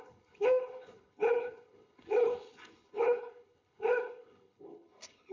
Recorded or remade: remade